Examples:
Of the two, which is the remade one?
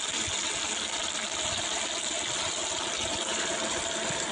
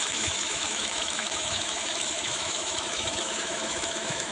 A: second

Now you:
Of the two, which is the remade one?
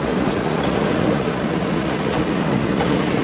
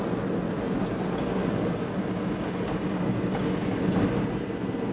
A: first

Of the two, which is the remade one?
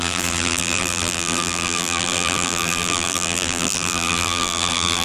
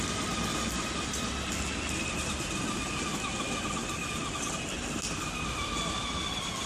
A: first